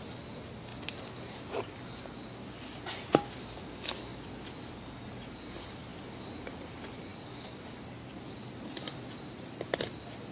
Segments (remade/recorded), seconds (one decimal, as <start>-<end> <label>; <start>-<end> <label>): 0.0-10.3 recorded